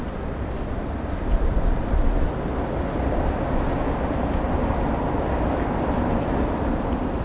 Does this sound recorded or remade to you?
recorded